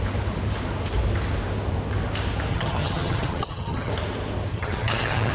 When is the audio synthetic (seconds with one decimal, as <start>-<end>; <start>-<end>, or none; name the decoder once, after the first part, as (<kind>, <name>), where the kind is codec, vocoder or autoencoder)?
2.5-3.9 (vocoder, HiFi-GAN); 4.5-5.3